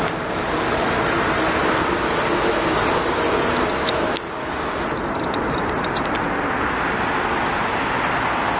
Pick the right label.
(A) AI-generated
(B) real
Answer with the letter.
B